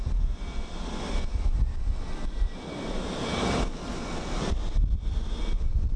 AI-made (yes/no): no